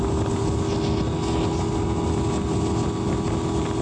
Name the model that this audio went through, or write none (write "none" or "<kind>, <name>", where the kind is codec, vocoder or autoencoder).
none